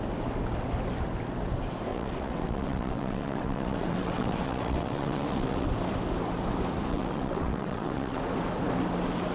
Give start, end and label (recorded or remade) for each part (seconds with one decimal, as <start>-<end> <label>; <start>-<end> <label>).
0.0-1.9 recorded; 1.9-5.7 remade; 5.7-6.9 recorded; 6.9-8.2 remade; 8.2-9.3 recorded